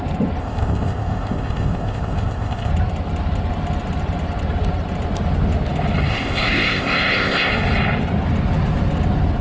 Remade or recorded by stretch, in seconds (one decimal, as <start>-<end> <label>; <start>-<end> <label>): 0.0-0.4 recorded; 0.4-2.7 remade; 2.7-6.1 recorded; 6.1-7.5 remade; 7.5-9.4 recorded